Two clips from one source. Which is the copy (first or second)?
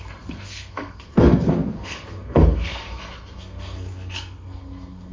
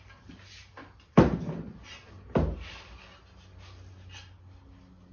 first